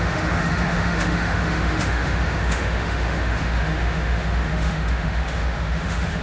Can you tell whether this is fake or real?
fake